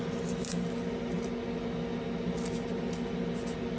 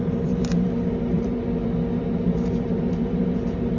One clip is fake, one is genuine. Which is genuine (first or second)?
first